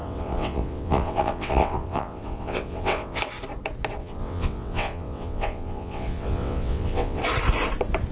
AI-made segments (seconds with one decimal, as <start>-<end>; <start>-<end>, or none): 0.0-3.2; 4.0-7.2